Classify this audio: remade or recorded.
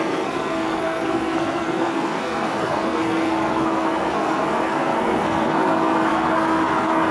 remade